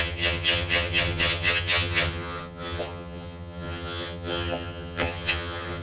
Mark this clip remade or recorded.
remade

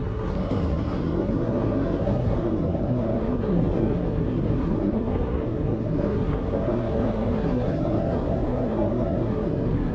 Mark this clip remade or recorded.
remade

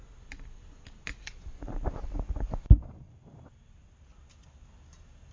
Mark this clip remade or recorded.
recorded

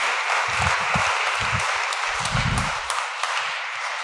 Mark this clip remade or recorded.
remade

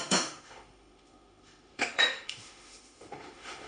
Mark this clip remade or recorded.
remade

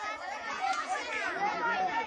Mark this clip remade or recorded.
remade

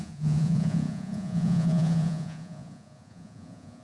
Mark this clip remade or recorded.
remade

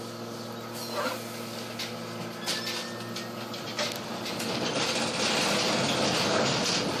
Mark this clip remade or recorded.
recorded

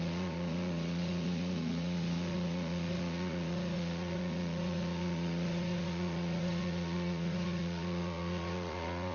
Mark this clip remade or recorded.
remade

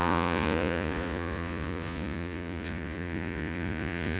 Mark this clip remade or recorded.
remade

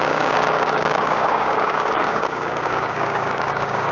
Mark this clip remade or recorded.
remade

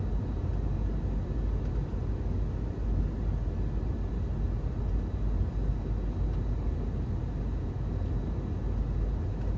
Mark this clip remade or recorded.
recorded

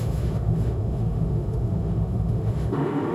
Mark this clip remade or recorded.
remade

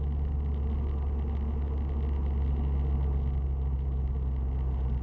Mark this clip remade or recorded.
recorded